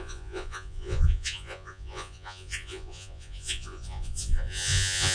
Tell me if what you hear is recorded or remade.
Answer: remade